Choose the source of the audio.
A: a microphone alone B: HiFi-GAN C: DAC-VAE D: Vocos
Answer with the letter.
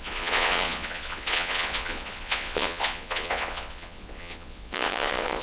D